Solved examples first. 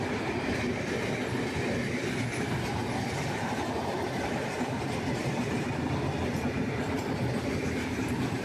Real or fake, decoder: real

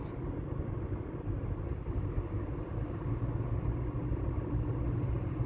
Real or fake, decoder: real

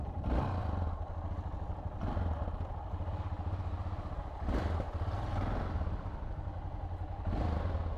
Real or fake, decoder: real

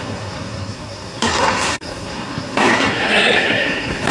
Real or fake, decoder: fake, codec, SNAC